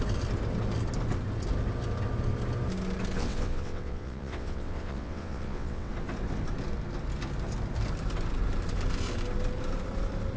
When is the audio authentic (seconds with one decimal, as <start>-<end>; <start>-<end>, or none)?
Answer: 0.0-3.2; 5.9-10.4